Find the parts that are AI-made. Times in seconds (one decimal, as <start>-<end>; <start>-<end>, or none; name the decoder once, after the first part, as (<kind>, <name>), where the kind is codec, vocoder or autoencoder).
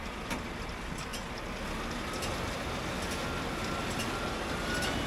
none